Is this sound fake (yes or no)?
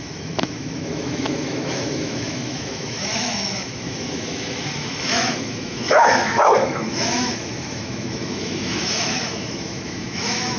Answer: yes